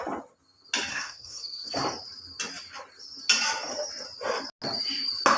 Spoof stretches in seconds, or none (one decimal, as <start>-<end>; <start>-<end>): 0.9-1.7